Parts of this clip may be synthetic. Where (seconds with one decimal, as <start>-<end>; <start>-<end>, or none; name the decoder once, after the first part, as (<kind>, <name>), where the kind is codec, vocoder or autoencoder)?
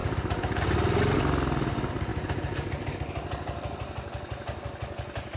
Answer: 0.0-0.6 (vocoder, BigVGAN v2); 2.1-2.9